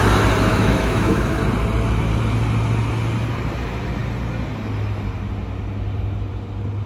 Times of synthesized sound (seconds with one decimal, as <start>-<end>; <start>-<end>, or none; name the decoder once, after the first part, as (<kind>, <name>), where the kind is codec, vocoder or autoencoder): 0.5-1.4 (autoencoder, DAC-VAE)